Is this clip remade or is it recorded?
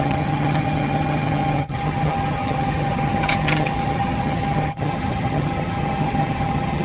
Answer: remade